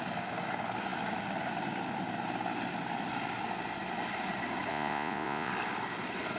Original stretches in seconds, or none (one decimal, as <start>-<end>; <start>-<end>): 0.0-4.7; 5.5-6.4